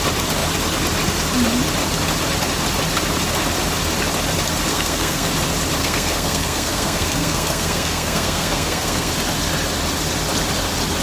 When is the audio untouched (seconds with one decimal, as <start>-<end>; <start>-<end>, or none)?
0.0-4.7; 5.3-5.8; 9.1-11.0